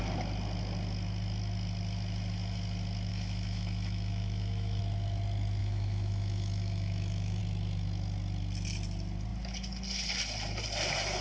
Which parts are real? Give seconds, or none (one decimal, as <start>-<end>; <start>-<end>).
0.0-3.1; 4.8-5.6; 7.4-11.2